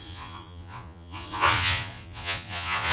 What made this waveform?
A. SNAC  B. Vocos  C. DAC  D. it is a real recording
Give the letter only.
B